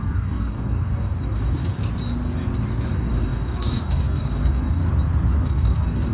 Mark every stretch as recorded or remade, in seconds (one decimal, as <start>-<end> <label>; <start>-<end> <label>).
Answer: 0.0-1.7 remade; 1.7-2.9 recorded; 2.9-4.8 remade; 4.8-5.4 recorded; 5.4-6.1 remade